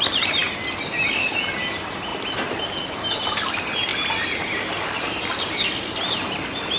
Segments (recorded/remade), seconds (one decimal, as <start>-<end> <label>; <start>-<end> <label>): 0.0-6.8 recorded